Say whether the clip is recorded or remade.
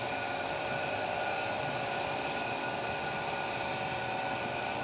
recorded